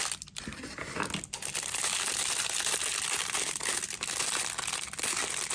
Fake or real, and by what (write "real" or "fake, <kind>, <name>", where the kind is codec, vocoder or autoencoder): fake, vocoder, BigVGAN v2